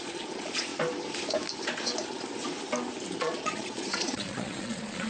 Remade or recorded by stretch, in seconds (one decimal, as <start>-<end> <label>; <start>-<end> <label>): 0.0-0.7 remade; 0.7-3.2 recorded; 3.2-5.1 remade